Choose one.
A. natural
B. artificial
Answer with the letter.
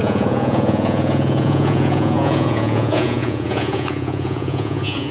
B